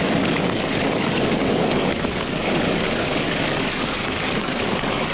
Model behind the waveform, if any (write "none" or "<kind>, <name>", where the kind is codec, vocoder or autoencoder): codec, DAC